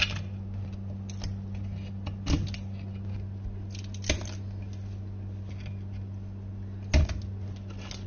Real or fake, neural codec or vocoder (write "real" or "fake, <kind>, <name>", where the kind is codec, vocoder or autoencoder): real